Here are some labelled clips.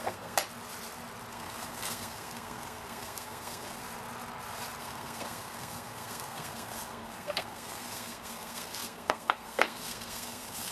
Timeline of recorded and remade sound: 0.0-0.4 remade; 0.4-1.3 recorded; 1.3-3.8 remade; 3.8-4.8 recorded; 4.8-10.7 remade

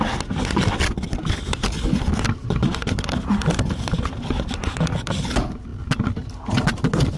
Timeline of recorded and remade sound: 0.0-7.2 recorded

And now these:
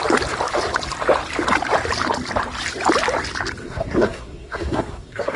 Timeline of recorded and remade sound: 0.0-3.6 recorded; 3.6-5.4 remade

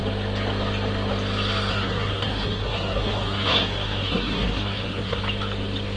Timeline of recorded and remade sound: 0.0-1.7 recorded; 1.7-5.2 remade; 5.2-6.0 recorded